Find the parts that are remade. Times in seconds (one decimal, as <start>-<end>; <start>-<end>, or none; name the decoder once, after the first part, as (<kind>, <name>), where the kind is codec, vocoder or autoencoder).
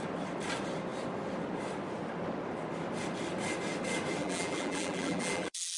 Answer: 4.2-5.8 (vocoder, BigVGAN v2)